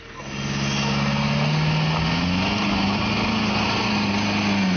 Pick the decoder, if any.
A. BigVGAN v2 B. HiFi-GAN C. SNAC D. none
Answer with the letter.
D